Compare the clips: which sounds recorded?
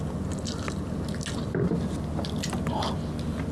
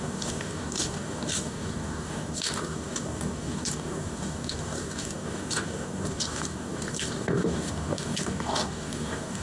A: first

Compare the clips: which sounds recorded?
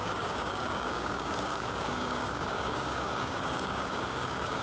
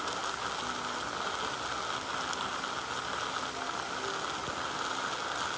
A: second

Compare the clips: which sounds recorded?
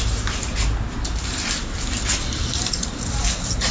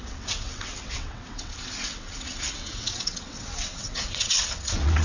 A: first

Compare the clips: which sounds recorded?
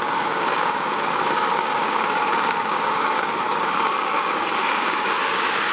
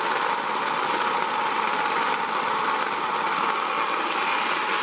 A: second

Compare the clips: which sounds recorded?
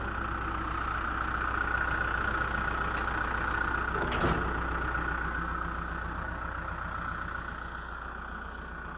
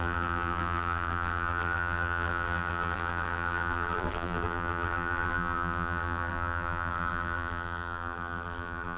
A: first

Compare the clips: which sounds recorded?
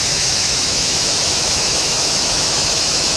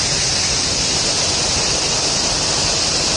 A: second